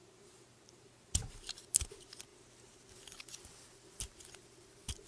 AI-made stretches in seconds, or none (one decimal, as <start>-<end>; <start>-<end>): 0.0-1.5